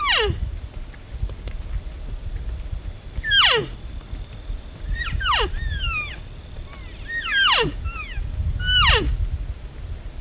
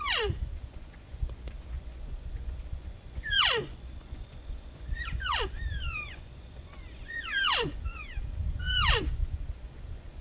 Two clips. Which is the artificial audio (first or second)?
second